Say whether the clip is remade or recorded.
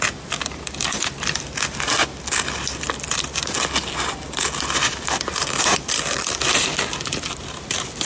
recorded